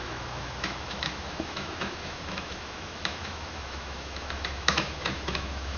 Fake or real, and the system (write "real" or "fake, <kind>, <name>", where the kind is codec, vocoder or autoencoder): fake, autoencoder, DAC-VAE